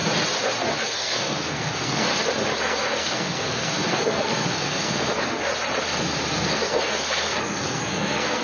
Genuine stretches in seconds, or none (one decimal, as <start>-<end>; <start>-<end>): 0.0-0.8; 2.1-2.6; 5.5-6.4